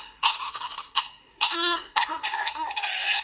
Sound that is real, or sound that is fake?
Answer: fake